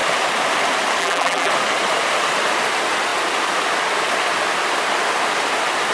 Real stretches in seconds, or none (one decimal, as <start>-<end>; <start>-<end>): 0.0-1.0; 1.5-5.9

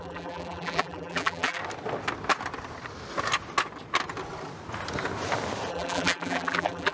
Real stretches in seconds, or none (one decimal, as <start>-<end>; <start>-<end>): 1.6-5.7

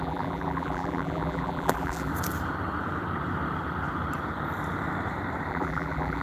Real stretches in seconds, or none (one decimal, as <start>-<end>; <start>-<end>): 2.1-5.5

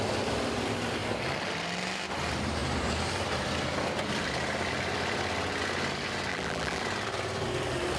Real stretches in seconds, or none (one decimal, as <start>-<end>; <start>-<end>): 0.0-6.3; 6.8-8.0

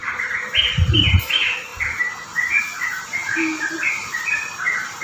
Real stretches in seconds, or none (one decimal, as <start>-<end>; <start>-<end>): 1.0-3.2

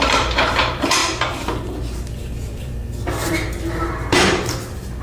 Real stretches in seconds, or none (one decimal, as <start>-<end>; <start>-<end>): 1.0-2.0; 2.8-3.3

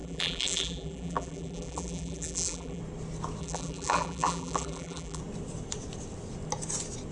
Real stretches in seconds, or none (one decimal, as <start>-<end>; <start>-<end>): 2.8-3.4; 5.2-7.1

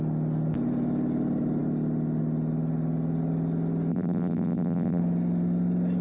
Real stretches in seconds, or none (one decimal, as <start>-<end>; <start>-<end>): 0.0-3.9; 5.0-6.0